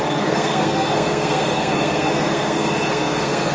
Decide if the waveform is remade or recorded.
remade